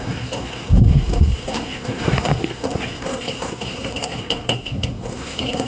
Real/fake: fake